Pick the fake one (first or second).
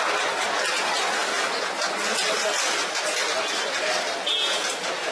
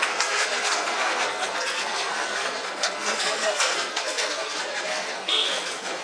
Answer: second